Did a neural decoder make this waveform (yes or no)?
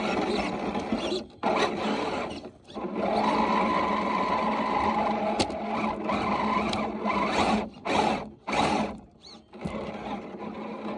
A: no